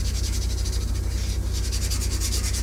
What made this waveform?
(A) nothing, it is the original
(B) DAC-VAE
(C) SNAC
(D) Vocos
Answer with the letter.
A